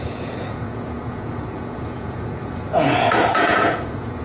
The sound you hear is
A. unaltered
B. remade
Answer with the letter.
B